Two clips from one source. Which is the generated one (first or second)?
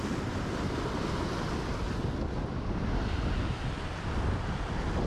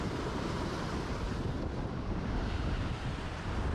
second